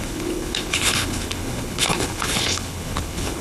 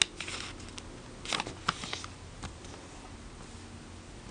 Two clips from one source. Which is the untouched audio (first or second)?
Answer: second